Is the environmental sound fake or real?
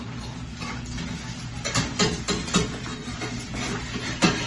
real